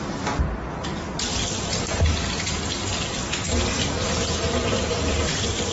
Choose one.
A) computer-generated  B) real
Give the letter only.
B